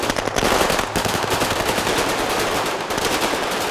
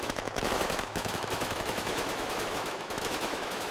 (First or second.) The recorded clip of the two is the first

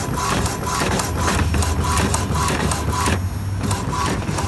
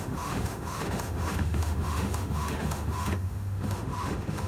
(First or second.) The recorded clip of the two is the first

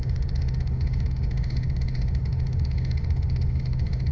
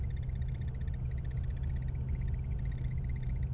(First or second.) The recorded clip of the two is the second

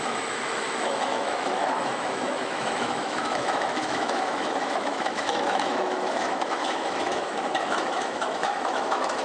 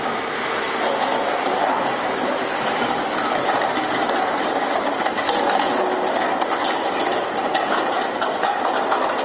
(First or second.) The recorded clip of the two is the second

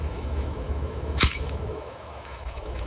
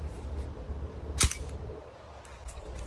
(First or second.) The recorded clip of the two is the second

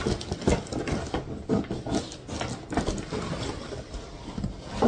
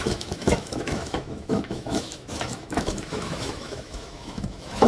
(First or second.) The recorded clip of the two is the first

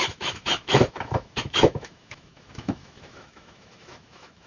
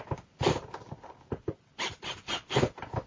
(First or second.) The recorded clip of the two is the second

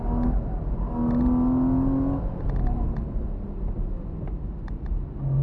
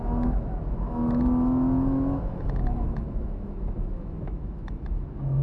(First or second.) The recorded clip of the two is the first